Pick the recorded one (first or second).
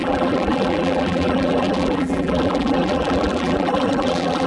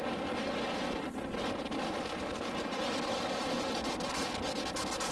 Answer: second